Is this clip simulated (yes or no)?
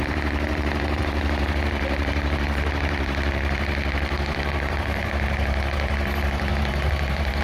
yes